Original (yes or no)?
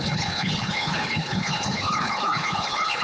no